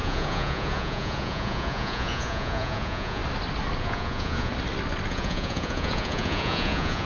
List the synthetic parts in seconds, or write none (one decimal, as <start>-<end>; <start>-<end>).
0.0-3.2; 3.8-4.5; 5.1-7.0

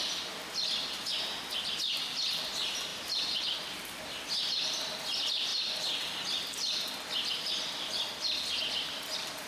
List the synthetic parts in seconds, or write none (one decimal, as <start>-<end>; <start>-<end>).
none